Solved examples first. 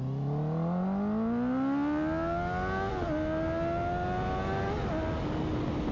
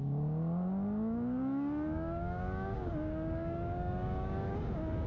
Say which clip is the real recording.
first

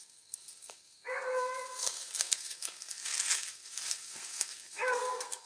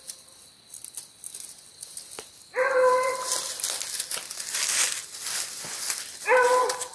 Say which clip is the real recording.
second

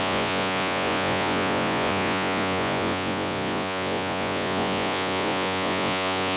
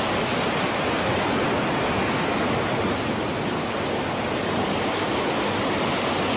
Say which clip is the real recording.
second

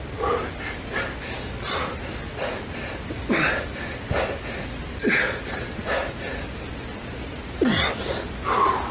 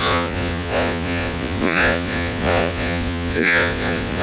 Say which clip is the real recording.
first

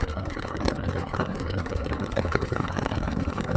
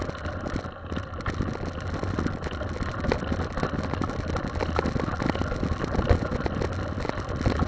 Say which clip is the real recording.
second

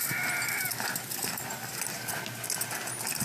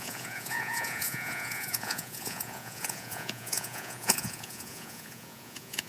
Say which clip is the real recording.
first